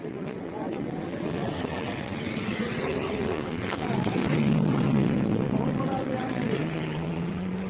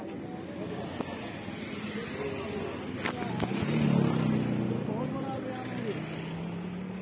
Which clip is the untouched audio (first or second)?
second